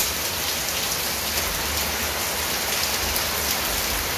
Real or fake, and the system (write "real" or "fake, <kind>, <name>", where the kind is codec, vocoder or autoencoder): real